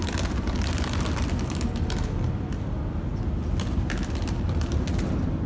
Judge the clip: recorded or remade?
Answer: recorded